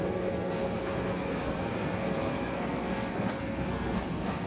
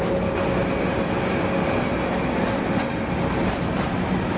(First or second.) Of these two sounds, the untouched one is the second